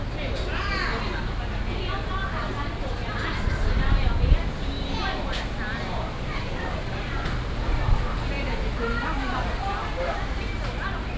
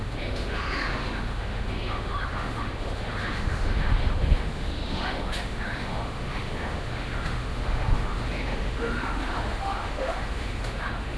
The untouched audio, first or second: first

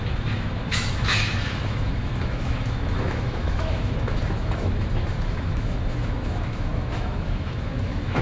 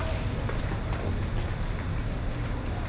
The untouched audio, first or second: second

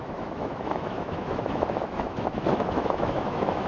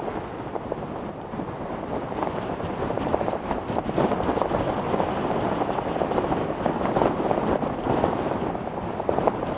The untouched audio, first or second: second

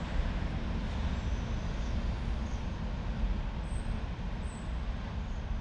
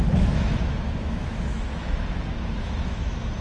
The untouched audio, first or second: first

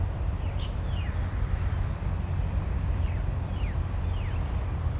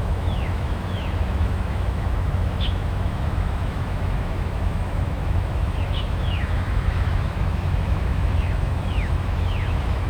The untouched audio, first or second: first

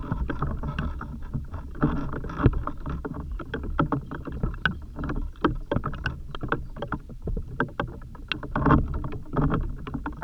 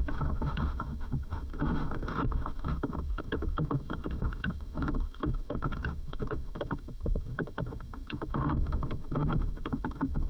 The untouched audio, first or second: first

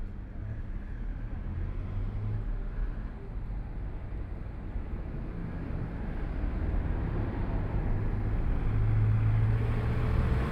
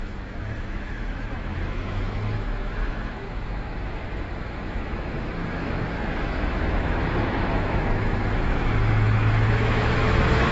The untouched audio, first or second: first